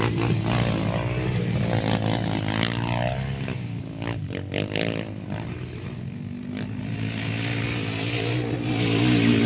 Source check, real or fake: real